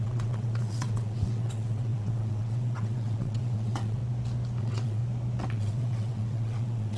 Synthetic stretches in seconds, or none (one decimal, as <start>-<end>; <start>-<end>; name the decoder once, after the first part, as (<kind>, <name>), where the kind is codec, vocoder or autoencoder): 0.0-4.0 (vocoder, WaveNeXt); 4.6-5.0; 5.5-7.0